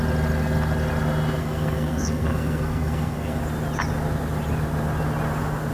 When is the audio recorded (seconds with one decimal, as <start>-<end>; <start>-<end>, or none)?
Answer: 0.0-1.4; 3.4-5.7

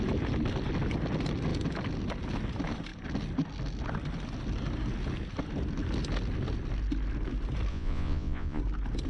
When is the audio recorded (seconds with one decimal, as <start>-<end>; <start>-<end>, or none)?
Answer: 0.0-7.7; 8.6-9.1

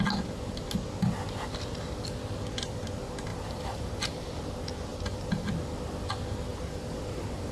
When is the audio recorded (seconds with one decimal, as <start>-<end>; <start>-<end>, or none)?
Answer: 0.0-3.3; 4.4-4.9; 5.5-6.5

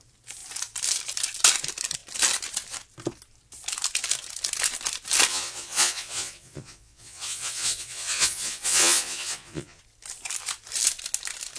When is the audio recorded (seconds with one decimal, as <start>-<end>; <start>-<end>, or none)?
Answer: 0.0-5.3; 9.8-11.6

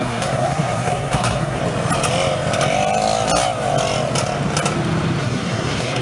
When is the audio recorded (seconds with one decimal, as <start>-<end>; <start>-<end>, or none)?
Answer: 1.6-5.2

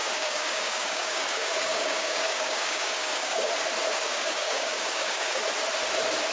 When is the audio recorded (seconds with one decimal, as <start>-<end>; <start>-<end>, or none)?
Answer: 3.5-3.9; 5.4-6.3